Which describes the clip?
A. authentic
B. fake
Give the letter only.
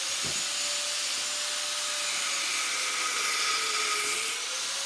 A